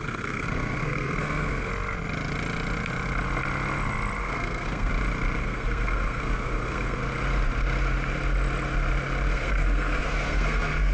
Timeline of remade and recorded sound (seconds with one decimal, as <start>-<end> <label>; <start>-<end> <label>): 0.0-1.7 remade; 1.7-4.2 recorded; 4.2-4.9 remade; 4.9-5.4 recorded; 5.4-7.0 remade; 7.0-9.3 recorded; 9.3-10.9 remade